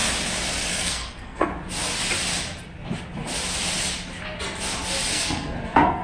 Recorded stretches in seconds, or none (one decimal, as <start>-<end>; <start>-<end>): 0.0-0.7; 1.5-5.1